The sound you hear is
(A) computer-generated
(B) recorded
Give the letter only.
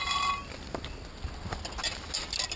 B